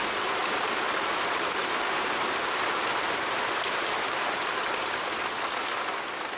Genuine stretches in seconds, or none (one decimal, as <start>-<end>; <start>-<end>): 0.0-0.4; 4.2-6.4